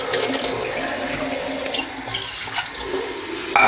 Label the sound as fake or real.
real